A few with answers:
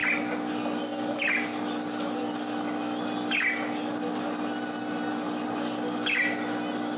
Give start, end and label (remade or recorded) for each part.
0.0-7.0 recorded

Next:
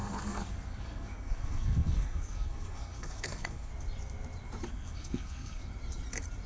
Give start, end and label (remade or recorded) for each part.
0.0-3.7 remade; 3.7-4.7 recorded; 4.7-5.6 remade; 5.6-6.5 recorded

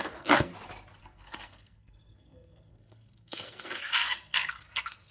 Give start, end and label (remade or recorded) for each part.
0.0-0.5 remade; 0.5-1.0 recorded; 1.0-5.1 remade

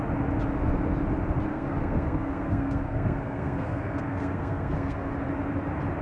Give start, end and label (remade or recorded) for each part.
0.0-1.5 recorded; 1.5-5.1 remade; 5.1-6.0 recorded

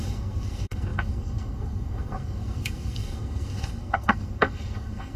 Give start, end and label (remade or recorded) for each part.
0.0-5.2 remade

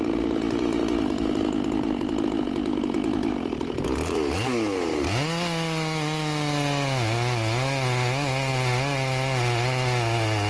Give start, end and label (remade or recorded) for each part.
0.0-10.5 recorded

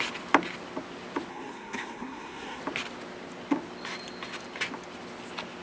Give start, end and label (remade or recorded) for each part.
0.0-1.3 recorded; 1.3-2.6 remade; 2.6-5.6 recorded